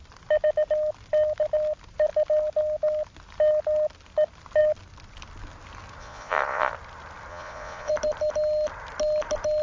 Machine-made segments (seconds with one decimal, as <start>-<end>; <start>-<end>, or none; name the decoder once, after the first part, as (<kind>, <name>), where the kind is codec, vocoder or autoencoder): 6.0-6.7 (vocoder, Vocos); 7.3-7.9